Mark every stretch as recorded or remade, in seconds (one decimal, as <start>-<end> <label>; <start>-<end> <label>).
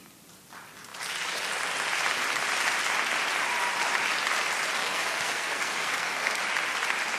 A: 0.0-4.8 recorded; 4.8-6.4 remade; 6.4-7.2 recorded